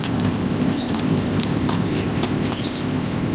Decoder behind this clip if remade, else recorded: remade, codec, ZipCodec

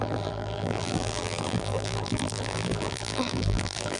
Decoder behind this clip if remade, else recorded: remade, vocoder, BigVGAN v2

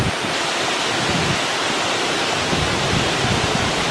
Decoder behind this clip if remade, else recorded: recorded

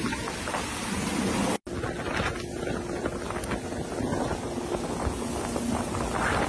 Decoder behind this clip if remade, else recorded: recorded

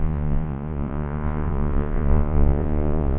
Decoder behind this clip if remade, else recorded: remade, vocoder, Vocos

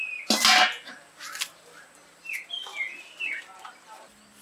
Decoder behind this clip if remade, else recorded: recorded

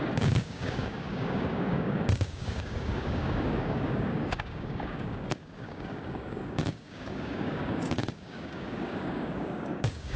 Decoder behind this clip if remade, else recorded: remade, codec, DAC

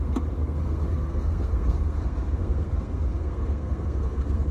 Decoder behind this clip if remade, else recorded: remade, codec, SNAC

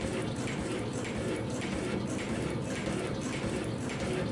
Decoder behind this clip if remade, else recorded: recorded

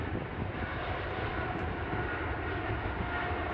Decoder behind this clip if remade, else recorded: remade, vocoder, BigVGAN v2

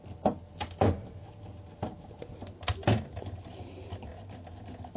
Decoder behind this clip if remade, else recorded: recorded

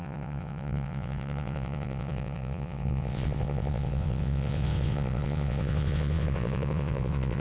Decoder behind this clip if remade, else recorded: remade, vocoder, WaveNeXt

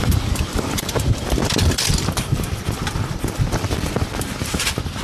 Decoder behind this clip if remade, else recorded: remade, vocoder, BigVGAN v2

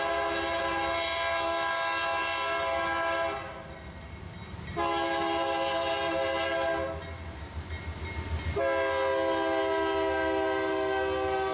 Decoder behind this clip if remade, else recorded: recorded